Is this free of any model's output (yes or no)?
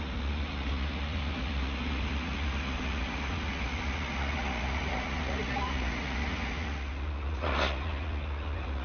no